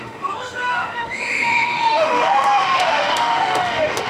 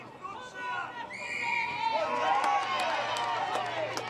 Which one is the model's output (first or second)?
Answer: first